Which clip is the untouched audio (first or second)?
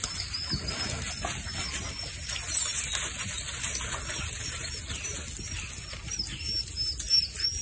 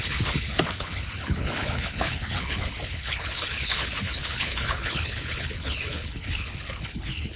first